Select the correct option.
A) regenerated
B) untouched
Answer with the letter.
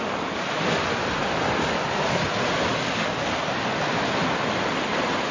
B